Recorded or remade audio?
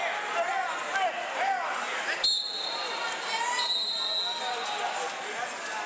recorded